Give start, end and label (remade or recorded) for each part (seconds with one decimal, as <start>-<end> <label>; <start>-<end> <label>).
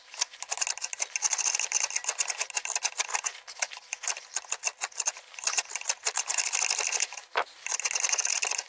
0.0-8.7 recorded